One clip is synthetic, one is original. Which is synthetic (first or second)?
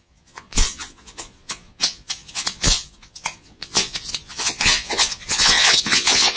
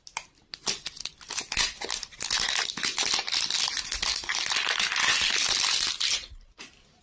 first